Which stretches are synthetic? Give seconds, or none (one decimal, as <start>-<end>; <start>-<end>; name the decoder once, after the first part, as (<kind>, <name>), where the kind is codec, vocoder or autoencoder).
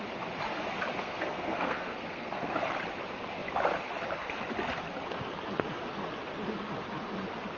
1.0-2.6 (codec, SNAC)